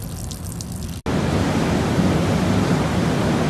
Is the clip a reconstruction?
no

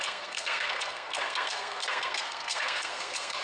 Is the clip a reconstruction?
yes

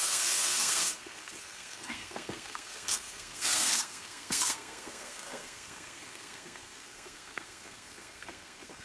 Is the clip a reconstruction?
yes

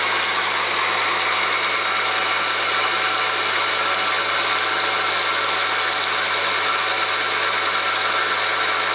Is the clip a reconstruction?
no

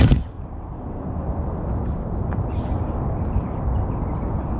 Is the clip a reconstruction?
yes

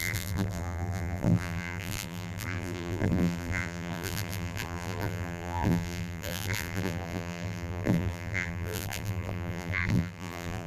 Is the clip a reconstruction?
yes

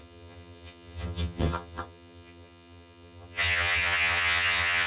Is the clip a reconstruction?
yes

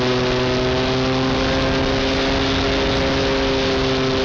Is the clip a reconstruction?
no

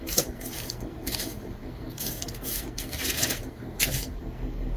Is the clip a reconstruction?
yes